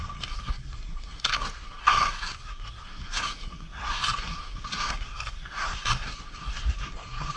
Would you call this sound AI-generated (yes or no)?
yes